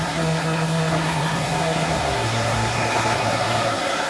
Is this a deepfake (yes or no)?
yes